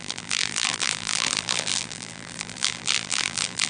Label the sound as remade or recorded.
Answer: remade